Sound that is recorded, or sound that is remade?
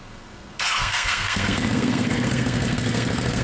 remade